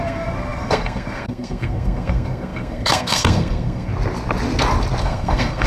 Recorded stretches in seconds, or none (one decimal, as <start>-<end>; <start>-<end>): 3.9-5.0